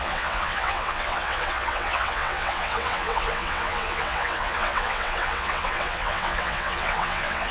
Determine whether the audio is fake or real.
fake